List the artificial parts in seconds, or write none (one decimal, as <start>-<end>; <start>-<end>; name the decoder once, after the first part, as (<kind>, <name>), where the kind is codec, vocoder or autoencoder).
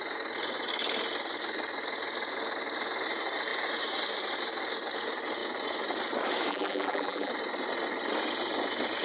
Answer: 6.5-7.3 (vocoder, BigVGAN v2)